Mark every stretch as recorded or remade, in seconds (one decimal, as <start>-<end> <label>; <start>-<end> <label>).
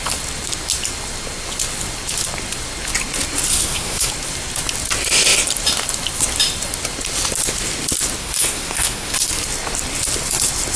0.0-3.5 recorded; 3.5-4.1 remade; 4.1-8.2 recorded; 8.2-9.3 remade; 9.3-10.8 recorded